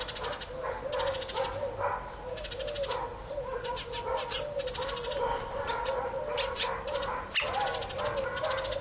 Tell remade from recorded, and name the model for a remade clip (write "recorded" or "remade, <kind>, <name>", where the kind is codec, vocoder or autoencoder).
recorded